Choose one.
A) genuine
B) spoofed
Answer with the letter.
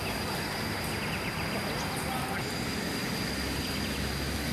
A